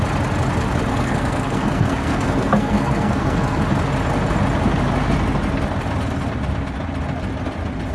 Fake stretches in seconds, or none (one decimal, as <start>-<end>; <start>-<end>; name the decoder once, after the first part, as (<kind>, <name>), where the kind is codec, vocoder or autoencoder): 0.9-3.6 (codec, SNAC)